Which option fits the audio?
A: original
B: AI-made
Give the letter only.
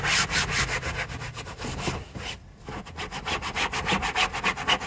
A